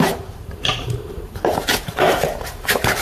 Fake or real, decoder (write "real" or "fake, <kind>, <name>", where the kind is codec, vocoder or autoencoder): fake, vocoder, BigVGAN v2